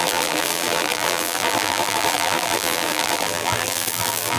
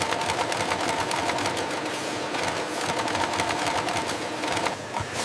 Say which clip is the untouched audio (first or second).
second